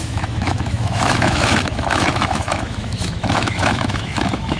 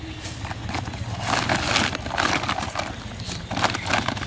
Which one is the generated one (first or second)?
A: first